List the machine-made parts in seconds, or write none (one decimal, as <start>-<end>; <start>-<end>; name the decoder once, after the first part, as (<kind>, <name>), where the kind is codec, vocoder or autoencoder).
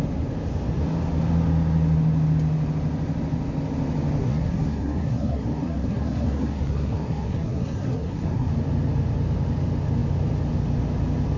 4.2-8.5 (codec, SNAC)